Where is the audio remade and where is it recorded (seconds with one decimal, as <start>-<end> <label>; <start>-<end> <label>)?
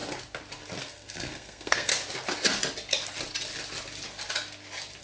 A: 0.0-0.8 recorded; 0.8-1.9 remade; 1.9-5.0 recorded